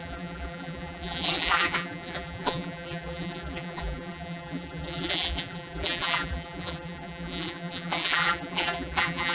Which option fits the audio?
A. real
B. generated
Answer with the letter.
B